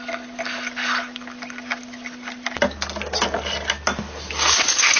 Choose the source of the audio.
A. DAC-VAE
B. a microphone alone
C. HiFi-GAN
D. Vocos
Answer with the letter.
B